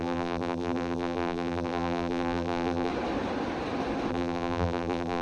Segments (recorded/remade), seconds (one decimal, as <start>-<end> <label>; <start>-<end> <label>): 0.0-2.9 remade; 2.9-4.1 recorded; 4.1-5.2 remade